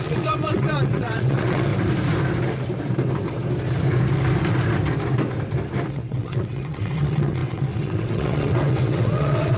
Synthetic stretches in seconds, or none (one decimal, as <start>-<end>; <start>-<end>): 0.0-1.7; 5.9-9.6